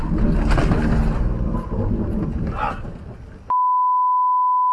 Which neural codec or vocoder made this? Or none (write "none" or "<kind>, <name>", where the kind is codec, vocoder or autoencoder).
none